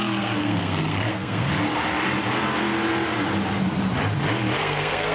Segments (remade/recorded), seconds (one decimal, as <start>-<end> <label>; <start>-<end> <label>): 0.0-1.5 remade; 1.5-4.6 recorded; 4.6-5.1 remade